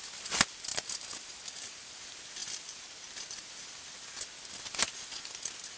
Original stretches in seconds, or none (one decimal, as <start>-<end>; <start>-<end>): 0.0-0.7; 2.0-5.8